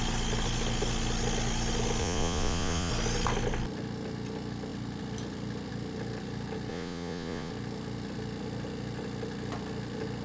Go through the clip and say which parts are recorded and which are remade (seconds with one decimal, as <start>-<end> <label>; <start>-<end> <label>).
0.0-2.0 recorded; 2.0-2.9 remade; 2.9-6.7 recorded; 6.7-7.5 remade; 7.5-10.2 recorded